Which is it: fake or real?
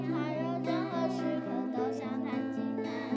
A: real